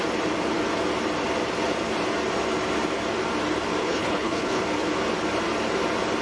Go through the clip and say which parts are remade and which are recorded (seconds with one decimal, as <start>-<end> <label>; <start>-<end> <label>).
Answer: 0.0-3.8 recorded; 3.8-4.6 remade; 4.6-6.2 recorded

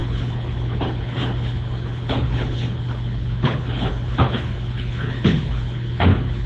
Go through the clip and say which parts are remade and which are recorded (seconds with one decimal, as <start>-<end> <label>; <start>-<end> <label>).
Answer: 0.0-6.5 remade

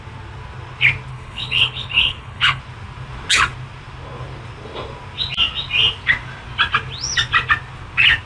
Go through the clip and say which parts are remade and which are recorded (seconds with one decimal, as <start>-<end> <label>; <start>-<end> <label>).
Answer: 0.0-1.1 recorded; 1.1-2.6 remade; 2.6-8.3 recorded

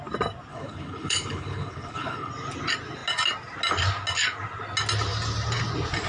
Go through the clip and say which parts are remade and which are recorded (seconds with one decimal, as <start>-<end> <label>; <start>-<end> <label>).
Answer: 0.0-0.5 recorded; 0.5-2.3 remade; 2.3-6.1 recorded

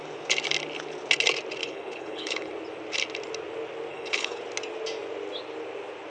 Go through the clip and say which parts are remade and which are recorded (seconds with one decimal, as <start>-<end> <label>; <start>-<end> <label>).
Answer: 0.0-1.6 recorded; 1.6-2.5 remade; 2.5-3.9 recorded; 3.9-4.4 remade; 4.4-6.1 recorded